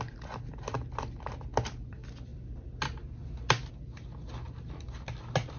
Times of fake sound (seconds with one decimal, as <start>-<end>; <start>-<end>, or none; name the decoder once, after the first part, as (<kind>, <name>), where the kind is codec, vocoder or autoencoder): none